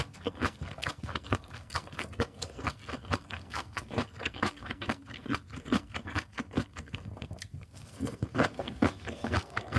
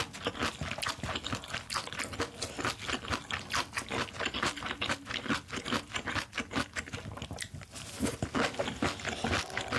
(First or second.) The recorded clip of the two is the second